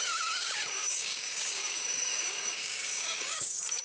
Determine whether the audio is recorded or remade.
remade